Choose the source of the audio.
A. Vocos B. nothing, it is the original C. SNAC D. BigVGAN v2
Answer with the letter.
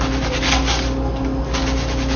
B